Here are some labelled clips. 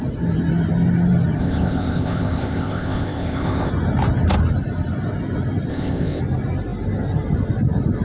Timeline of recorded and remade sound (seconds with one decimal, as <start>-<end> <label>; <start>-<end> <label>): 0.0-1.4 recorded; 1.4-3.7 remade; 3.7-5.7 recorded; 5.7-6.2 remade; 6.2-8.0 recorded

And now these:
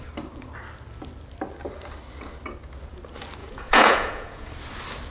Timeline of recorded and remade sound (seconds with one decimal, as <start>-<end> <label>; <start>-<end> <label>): 0.0-3.4 recorded; 3.4-4.5 remade; 4.5-5.1 recorded

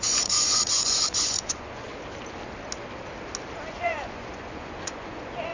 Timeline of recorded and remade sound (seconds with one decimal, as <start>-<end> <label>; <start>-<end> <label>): 0.0-1.9 remade; 1.9-3.7 recorded; 3.7-5.5 remade

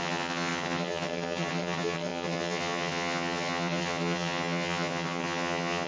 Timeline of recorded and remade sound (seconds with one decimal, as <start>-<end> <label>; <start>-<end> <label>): 0.0-5.9 remade

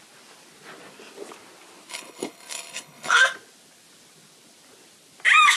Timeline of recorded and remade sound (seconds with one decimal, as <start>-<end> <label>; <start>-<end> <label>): 0.0-1.9 recorded; 1.9-3.2 remade; 3.2-5.6 recorded

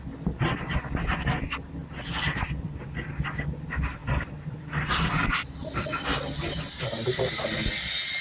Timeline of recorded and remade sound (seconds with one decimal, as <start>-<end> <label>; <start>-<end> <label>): 0.0-1.8 recorded; 1.8-2.8 remade; 2.8-4.0 recorded; 4.0-6.6 remade; 6.6-8.2 recorded